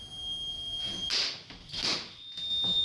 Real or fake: real